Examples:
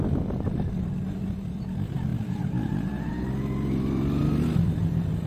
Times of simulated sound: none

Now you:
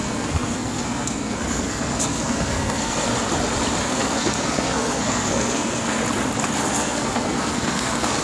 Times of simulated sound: 0.0-3.1 (codec, SNAC); 3.8-6.0; 6.6-8.2

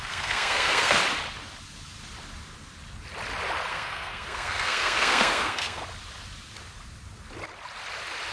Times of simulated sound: 0.0-1.0 (codec, SNAC); 3.7-5.8

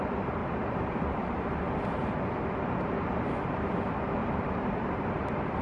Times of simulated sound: 0.4-2.1 (vocoder, BigVGAN v2); 4.2-5.6

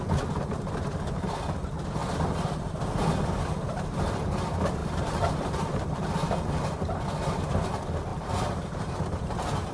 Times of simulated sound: 4.8-6.5 (vocoder, BigVGAN v2); 8.1-8.9

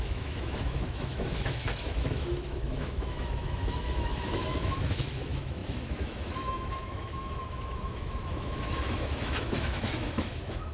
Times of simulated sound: 0.0-10.7 (autoencoder, DAC-VAE)

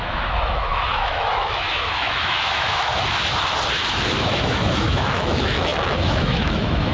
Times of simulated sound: 0.0-2.9 (autoencoder, DAC-VAE); 4.2-6.9